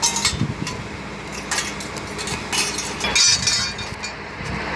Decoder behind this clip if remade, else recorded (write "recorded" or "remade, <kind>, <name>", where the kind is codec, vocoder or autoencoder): recorded